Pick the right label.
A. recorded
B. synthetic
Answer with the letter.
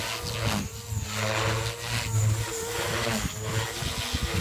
A